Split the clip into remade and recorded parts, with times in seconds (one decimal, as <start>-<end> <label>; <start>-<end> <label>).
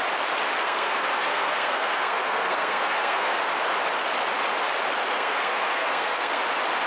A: 0.0-0.6 recorded; 0.6-3.4 remade; 3.4-5.0 recorded; 5.0-6.4 remade; 6.4-6.9 recorded